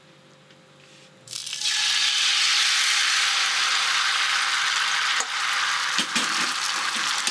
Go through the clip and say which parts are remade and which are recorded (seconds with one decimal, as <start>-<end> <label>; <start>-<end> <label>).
0.0-7.3 recorded